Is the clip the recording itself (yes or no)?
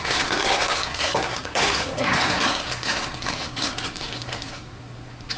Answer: no